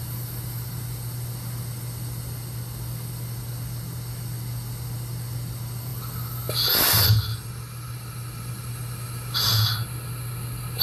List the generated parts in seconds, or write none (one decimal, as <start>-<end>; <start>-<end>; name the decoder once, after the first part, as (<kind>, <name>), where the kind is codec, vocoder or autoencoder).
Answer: none